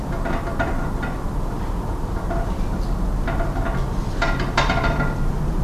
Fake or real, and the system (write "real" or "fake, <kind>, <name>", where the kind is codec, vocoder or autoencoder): real